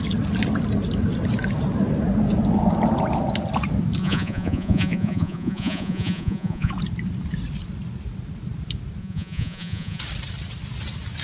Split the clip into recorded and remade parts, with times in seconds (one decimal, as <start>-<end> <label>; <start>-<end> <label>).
0.0-4.0 recorded; 4.0-6.7 remade; 6.7-9.0 recorded; 9.0-10.0 remade; 10.0-11.2 recorded